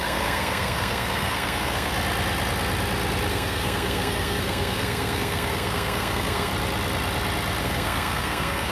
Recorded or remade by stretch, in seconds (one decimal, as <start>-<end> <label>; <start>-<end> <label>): 0.0-1.9 remade; 1.9-3.3 recorded; 3.3-6.5 remade; 6.5-7.6 recorded; 7.6-8.7 remade